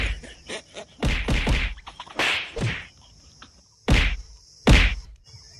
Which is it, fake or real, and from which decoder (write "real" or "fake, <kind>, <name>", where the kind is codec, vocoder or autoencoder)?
fake, vocoder, BigVGAN v2